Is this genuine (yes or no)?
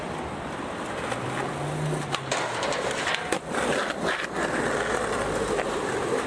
yes